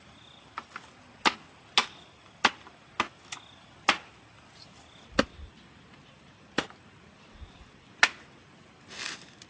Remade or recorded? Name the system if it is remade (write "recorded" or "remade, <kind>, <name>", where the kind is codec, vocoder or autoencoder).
recorded